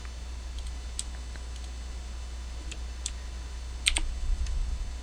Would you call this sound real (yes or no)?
yes